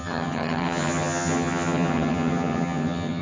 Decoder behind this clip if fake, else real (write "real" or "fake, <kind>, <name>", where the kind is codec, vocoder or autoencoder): fake, vocoder, HiFi-GAN